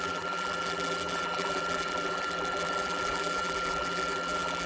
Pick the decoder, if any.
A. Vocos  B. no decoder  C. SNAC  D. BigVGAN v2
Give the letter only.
D